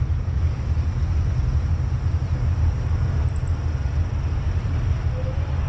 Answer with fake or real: real